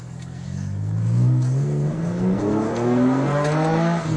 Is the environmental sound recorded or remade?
remade